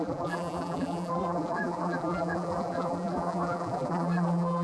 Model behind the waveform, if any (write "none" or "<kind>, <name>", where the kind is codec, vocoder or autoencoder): vocoder, BigVGAN v2